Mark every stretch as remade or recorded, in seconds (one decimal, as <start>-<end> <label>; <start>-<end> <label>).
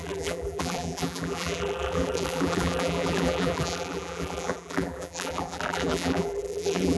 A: 0.0-7.0 remade